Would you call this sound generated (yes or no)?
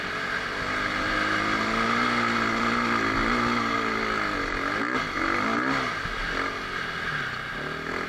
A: no